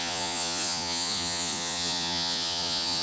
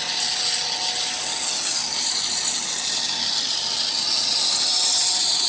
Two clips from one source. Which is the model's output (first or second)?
first